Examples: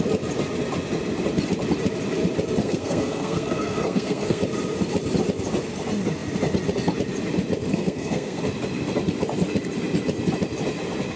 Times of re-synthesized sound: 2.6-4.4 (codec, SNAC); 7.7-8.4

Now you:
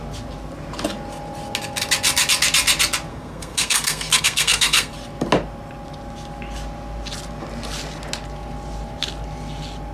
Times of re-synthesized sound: 3.1-4.9 (codec, SNAC)